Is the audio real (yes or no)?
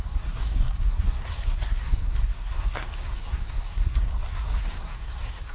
no